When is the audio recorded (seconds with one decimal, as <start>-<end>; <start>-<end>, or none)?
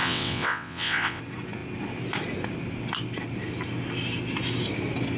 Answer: 1.2-5.2